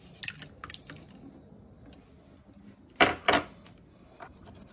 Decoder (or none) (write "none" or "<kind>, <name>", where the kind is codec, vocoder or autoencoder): none